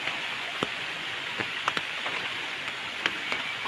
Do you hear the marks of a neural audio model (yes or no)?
yes